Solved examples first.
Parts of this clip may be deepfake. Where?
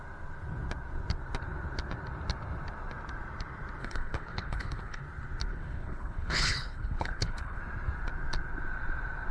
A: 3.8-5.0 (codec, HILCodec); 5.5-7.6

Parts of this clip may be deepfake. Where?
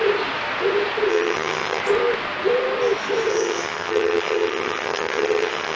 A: 1.1-1.8 (vocoder, HiFi-GAN); 3.3-5.8